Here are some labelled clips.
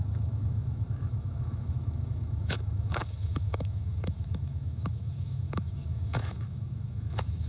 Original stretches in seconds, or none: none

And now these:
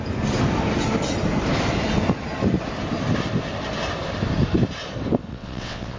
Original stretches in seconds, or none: 0.0-5.3